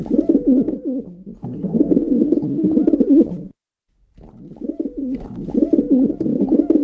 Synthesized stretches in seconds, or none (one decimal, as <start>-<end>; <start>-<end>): 1.4-2.2; 5.0-5.5